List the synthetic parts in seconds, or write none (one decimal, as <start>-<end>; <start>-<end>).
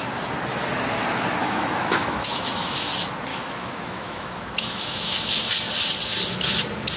1.4-2.9; 3.3-5.5